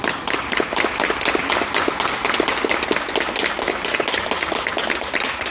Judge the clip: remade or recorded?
recorded